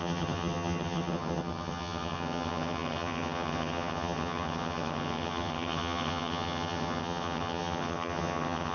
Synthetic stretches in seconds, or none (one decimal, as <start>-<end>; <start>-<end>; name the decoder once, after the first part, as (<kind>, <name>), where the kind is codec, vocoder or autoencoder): 0.0-8.7 (vocoder, HiFi-GAN)